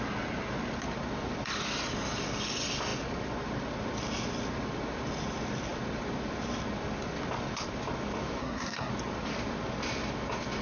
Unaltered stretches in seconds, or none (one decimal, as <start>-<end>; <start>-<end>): 0.0-8.4; 8.9-10.6